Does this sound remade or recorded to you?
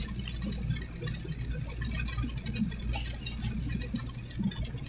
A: recorded